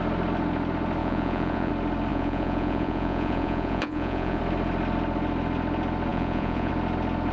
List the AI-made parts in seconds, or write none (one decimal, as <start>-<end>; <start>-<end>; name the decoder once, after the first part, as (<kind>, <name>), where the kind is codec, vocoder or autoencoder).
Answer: 1.0-1.7 (vocoder, Vocos); 2.1-4.4; 6.1-6.7